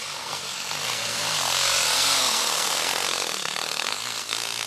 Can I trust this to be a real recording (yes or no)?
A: no